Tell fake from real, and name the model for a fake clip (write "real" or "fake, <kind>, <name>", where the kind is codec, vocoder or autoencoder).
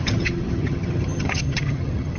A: fake, vocoder, HiFi-GAN